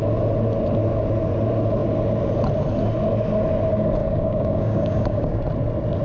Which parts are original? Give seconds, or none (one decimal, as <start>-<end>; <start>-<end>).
0.0-4.0; 5.4-6.0